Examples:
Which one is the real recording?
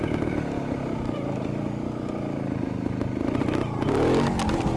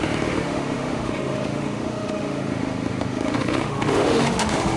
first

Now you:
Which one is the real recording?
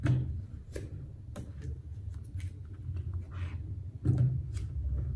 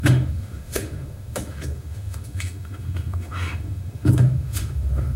first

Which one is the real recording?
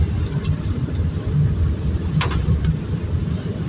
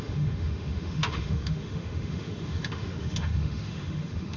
first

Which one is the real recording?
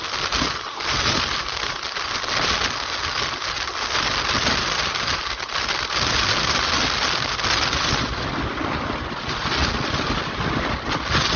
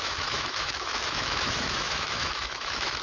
first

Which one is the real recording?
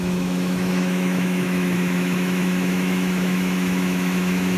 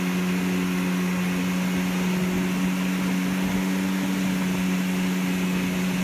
second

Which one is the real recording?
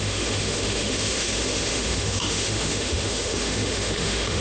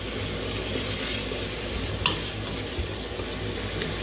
second